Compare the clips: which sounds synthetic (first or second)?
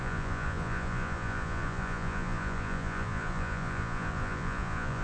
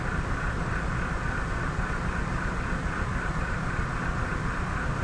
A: first